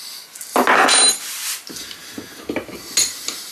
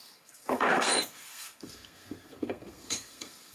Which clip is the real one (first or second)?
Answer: first